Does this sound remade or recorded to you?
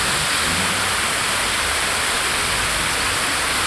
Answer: recorded